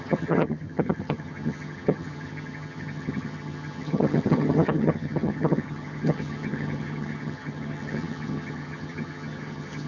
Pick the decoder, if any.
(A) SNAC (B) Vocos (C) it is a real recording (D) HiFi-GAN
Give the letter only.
D